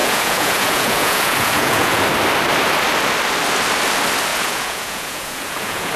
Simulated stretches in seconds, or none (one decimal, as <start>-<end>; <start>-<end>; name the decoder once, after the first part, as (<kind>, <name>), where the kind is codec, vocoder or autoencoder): 0.0-2.0 (vocoder, Vocos); 4.3-6.0